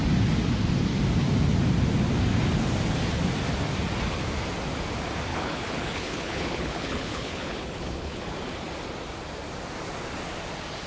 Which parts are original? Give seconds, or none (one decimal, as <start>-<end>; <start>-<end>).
0.0-5.3; 8.2-10.9